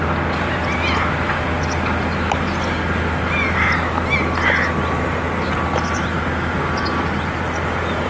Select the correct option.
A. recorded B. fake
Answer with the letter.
A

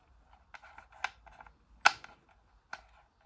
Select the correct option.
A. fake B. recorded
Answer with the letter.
B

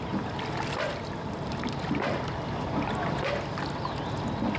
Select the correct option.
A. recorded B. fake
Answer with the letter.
A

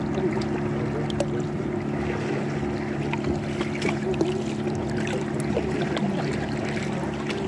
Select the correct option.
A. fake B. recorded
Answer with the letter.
B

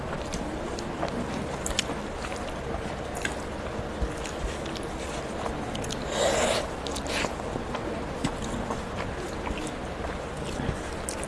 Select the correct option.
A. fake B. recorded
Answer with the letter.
B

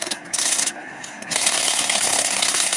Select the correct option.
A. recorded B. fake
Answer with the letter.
B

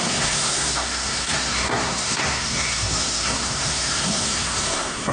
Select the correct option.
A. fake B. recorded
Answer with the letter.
A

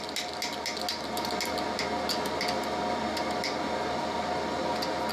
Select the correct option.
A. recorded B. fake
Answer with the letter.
A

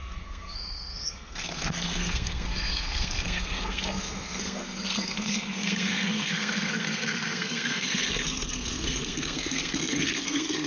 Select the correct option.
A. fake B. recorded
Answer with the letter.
A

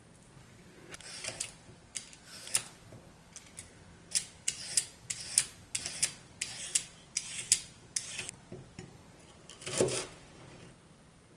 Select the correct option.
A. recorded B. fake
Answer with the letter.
A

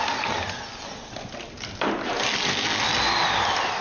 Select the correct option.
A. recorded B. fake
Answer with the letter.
A